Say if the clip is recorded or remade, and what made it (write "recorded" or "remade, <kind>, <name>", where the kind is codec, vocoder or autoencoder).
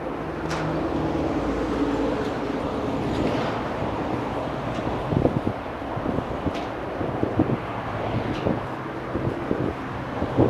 recorded